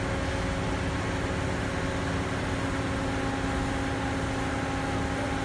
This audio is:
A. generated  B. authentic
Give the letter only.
B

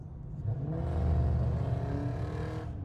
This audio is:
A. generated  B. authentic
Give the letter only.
B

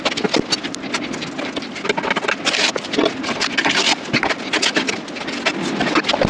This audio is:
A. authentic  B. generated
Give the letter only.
A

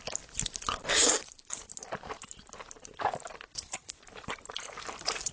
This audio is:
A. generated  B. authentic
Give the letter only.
B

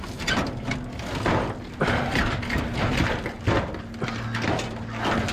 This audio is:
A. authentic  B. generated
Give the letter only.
A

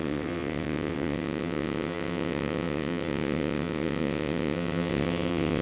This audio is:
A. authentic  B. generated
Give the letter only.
B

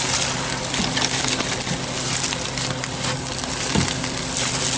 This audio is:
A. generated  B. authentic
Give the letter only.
B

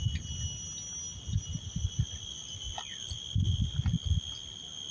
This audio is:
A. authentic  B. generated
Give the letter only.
A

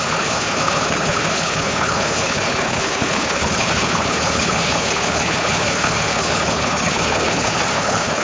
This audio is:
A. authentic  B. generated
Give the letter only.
B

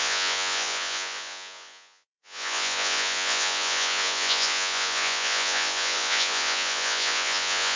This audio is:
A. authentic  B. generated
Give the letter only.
B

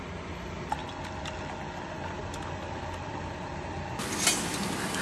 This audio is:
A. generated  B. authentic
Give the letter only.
B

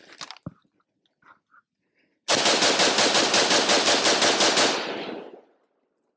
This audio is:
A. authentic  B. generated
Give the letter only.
A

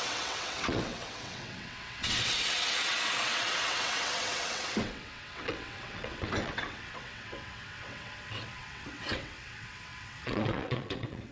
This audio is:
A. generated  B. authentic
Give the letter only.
A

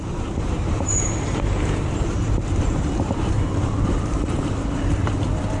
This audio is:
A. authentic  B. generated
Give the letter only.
B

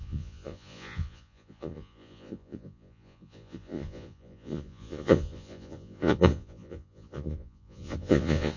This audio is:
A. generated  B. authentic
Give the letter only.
A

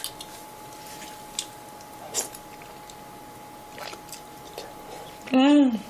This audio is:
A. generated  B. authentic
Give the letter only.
B